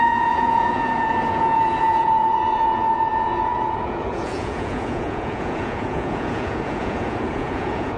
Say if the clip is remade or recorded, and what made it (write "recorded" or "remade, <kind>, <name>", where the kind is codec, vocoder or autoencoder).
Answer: remade, vocoder, Vocos